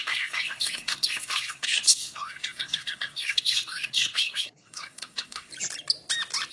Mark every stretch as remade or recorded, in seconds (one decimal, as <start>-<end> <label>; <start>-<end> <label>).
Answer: 0.0-5.5 remade; 5.5-6.5 recorded

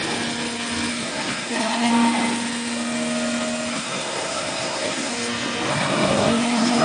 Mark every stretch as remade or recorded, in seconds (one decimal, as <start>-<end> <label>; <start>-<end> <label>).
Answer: 0.0-0.9 recorded; 0.9-1.9 remade; 1.9-3.7 recorded; 3.7-5.1 remade; 5.1-5.7 recorded; 5.7-6.8 remade

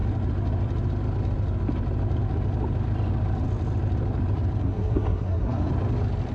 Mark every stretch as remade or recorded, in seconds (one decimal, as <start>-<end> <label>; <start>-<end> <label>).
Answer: 0.0-4.6 recorded; 4.6-5.7 remade; 5.7-6.3 recorded

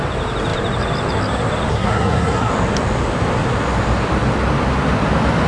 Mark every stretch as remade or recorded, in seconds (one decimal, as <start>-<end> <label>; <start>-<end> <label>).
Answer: 0.0-1.7 recorded; 1.7-2.5 remade; 2.5-5.5 recorded

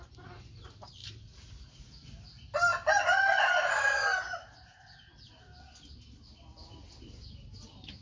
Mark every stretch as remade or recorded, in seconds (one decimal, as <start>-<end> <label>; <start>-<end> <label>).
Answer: 0.0-8.0 recorded